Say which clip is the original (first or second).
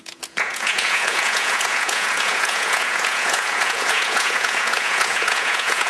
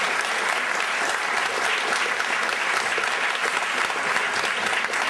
second